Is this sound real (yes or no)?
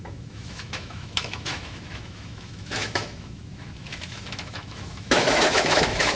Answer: no